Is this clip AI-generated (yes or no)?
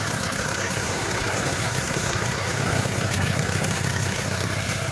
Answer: yes